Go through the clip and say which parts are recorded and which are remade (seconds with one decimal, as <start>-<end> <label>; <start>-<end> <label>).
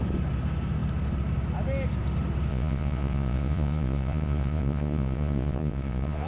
0.0-2.5 recorded; 2.5-6.3 remade